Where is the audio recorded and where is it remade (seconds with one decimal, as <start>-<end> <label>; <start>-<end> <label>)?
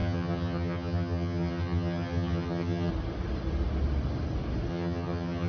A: 0.0-2.9 remade; 2.9-4.7 recorded; 4.7-5.5 remade